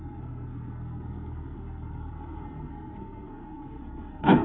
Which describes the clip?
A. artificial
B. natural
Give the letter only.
A